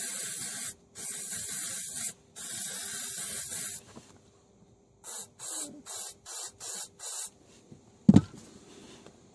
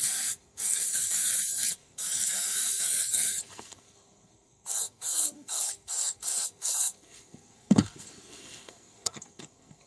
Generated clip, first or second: second